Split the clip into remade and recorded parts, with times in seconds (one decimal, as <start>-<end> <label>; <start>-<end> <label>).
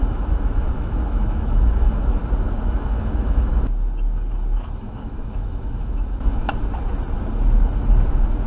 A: 0.0-2.2 remade; 2.2-2.7 recorded; 2.7-3.5 remade; 3.5-4.8 recorded; 4.8-6.4 remade; 6.4-8.5 recorded